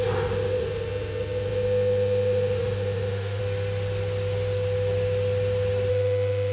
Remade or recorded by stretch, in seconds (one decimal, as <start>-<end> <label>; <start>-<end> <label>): 0.0-3.4 remade; 3.4-5.9 recorded; 5.9-6.5 remade